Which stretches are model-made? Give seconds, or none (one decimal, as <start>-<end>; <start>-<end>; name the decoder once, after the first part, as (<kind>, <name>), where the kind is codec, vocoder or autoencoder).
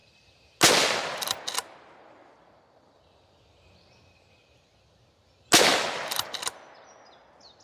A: none